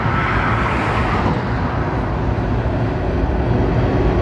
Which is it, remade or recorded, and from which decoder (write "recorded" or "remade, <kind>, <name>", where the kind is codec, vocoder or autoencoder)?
recorded